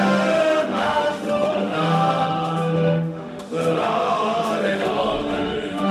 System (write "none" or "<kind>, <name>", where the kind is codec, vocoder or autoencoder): autoencoder, DAC-VAE